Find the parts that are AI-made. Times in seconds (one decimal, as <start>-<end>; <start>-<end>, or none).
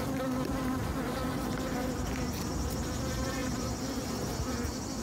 none